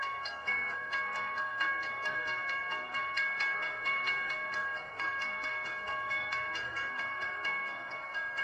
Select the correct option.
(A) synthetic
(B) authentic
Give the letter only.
A